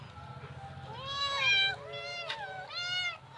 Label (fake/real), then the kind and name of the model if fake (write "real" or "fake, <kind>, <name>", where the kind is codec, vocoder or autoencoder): real